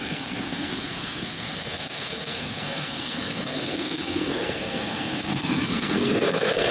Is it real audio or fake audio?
fake